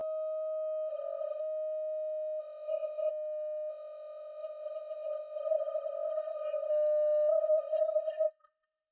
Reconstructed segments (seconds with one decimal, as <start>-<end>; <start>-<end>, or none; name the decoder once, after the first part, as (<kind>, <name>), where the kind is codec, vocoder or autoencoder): 0.9-1.4 (codec, SNAC); 2.4-3.1; 3.7-6.7; 7.3-8.9